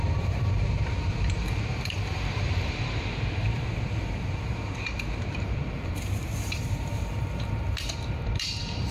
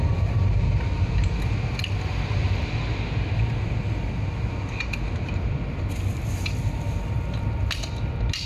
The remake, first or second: first